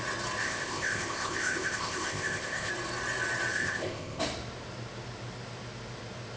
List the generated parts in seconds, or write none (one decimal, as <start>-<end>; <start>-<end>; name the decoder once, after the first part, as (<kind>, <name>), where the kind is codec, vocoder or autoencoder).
0.4-2.7 (codec, ZipCodec); 3.5-4.2